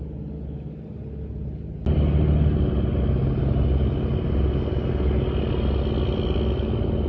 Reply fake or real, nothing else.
real